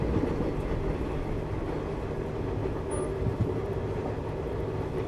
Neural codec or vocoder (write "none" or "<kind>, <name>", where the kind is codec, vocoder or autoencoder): none